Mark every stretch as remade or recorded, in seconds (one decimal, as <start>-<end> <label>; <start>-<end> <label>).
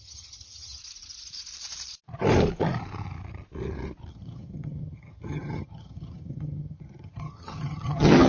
0.0-0.8 remade; 0.8-4.1 recorded; 4.1-8.3 remade